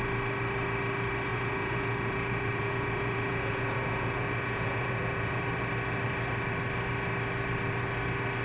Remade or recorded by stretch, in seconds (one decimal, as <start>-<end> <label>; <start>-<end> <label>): 0.0-1.3 recorded; 1.3-5.4 remade; 5.4-8.4 recorded